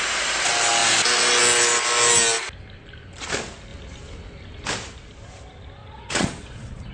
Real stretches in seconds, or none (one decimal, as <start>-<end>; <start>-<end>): 0.0-5.8